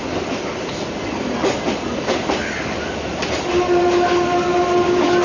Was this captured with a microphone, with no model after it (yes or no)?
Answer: yes